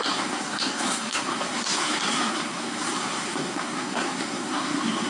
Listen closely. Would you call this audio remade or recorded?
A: remade